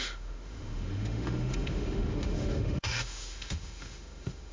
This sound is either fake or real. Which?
fake